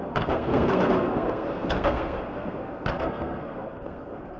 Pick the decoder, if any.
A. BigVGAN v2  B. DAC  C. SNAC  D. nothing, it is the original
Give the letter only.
C